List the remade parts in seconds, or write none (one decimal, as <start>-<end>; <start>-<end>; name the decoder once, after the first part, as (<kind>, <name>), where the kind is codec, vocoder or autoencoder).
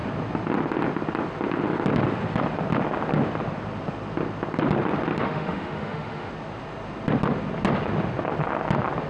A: 5.1-6.3 (autoencoder, DAC-VAE)